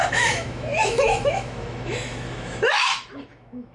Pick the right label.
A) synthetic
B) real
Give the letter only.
A